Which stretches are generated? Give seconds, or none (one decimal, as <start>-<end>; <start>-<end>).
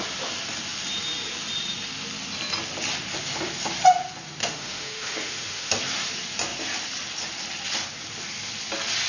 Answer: 4.4-5.7